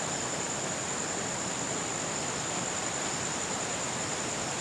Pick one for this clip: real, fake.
real